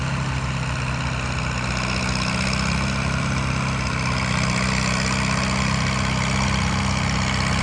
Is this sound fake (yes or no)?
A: no